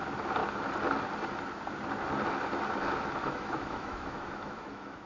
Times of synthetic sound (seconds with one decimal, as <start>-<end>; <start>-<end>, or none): 3.2-5.1